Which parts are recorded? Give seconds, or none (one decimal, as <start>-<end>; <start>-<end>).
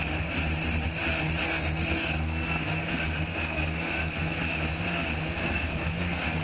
0.0-1.4; 4.4-5.4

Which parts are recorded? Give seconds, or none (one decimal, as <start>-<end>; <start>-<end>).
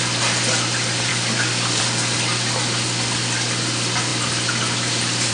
0.0-1.1; 1.8-5.3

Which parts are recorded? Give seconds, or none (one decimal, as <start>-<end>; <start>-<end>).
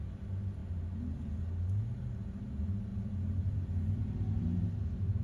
0.0-2.9; 4.7-5.2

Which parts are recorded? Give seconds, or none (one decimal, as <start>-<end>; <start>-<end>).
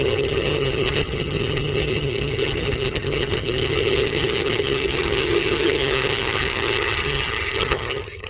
none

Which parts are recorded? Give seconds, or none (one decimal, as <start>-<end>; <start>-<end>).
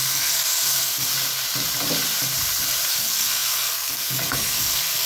1.1-2.9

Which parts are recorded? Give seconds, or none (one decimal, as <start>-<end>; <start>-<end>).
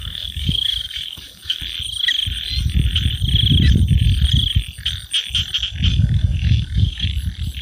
1.6-5.9; 7.1-7.6